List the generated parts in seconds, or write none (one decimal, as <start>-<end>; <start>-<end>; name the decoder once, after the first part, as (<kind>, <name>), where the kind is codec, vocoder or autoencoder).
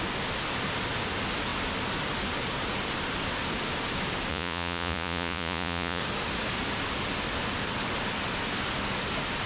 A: 4.3-6.0 (vocoder, Vocos)